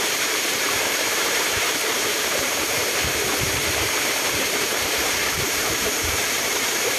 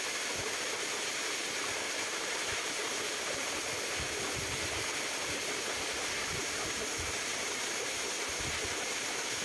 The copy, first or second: first